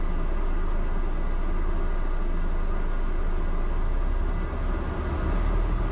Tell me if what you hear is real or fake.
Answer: real